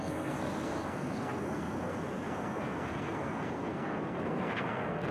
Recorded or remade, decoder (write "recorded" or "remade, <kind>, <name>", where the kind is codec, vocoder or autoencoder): remade, codec, SNAC